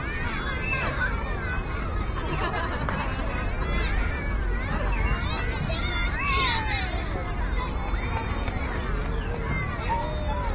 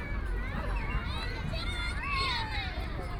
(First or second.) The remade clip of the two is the second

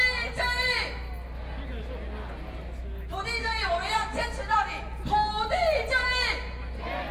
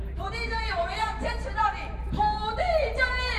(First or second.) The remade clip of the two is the second